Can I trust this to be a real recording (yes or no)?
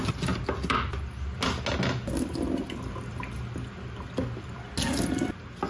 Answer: yes